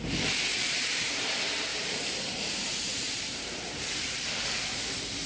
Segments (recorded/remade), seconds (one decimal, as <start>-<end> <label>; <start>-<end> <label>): 0.0-0.5 recorded; 0.5-1.2 remade; 1.2-1.7 recorded; 1.7-5.3 remade